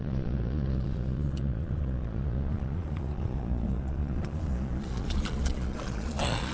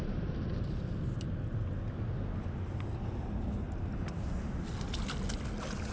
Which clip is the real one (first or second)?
second